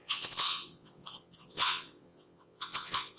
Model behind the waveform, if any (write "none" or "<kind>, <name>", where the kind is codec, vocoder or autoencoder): vocoder, WaveNeXt